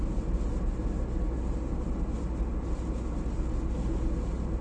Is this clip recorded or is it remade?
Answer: recorded